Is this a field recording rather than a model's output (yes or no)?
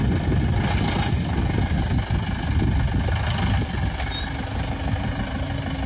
yes